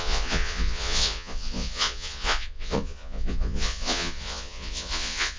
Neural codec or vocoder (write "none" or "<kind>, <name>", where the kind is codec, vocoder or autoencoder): vocoder, Vocos